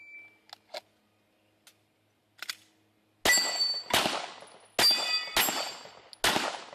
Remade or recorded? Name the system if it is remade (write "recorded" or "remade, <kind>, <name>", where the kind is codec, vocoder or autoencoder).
recorded